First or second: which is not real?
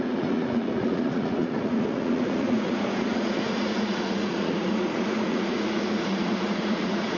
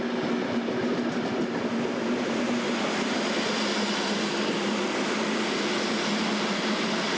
first